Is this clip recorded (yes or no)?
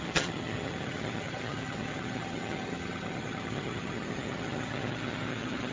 no